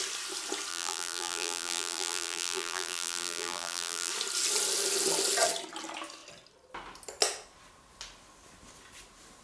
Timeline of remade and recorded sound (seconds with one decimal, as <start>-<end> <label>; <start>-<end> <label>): 0.0-0.7 recorded; 0.7-4.1 remade; 4.1-9.4 recorded